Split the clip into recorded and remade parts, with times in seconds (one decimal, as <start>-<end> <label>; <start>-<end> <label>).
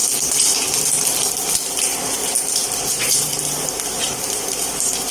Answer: 0.0-1.5 recorded; 1.5-2.2 remade; 2.2-2.9 recorded; 2.9-3.3 remade; 3.3-4.0 recorded; 4.0-5.1 remade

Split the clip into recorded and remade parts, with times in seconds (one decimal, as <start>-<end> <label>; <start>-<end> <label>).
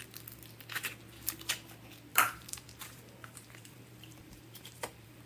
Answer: 0.0-2.1 recorded; 2.1-5.3 remade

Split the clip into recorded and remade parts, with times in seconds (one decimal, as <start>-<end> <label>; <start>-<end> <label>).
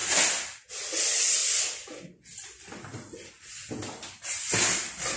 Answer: 0.0-5.2 recorded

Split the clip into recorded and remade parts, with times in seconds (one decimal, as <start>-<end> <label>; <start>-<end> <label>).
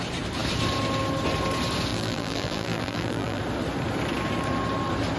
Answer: 0.0-1.9 recorded; 1.9-3.4 remade; 3.4-5.2 recorded